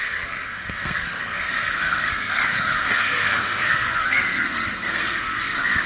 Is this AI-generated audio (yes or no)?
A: yes